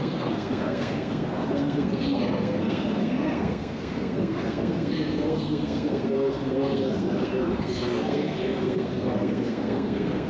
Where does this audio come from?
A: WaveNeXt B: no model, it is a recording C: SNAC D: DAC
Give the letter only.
C